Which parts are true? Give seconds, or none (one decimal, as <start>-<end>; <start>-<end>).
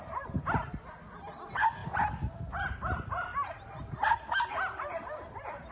0.0-5.7